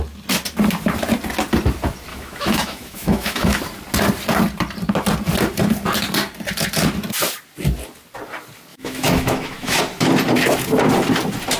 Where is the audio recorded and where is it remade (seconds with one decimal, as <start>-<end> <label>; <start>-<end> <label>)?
0.0-2.1 recorded; 2.1-3.6 remade; 3.6-8.7 recorded; 8.7-9.8 remade; 9.8-11.6 recorded